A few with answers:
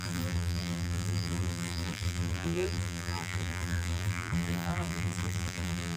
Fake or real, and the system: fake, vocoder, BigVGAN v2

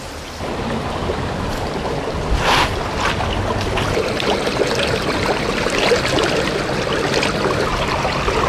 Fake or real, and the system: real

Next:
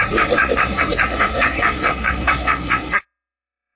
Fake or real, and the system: fake, codec, SNAC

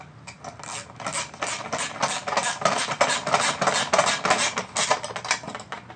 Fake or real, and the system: real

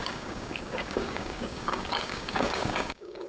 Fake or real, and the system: fake, codec, DAC